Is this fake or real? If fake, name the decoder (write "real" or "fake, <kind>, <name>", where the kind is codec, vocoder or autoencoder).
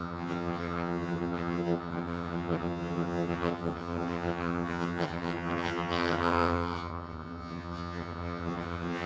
fake, vocoder, HiFi-GAN